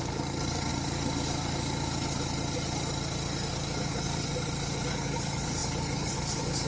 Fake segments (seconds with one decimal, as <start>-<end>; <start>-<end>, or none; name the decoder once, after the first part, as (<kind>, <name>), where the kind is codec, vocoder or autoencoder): 0.0-0.7 (codec, DAC); 3.5-4.3; 4.9-6.7